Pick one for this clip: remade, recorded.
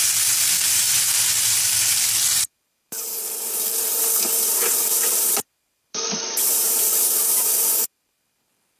remade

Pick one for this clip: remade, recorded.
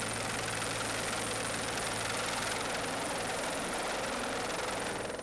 recorded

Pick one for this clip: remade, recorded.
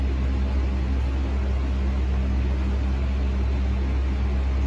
recorded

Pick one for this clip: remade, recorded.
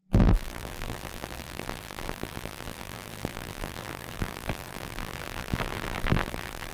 remade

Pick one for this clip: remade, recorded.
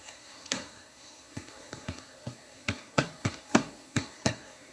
remade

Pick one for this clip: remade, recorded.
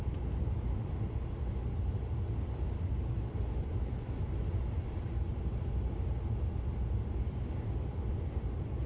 recorded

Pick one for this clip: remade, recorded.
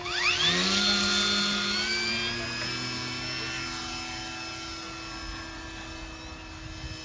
recorded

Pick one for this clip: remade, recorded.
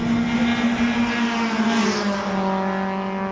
recorded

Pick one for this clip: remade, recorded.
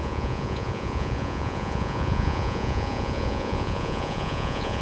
remade